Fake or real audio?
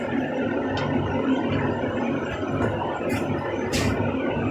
fake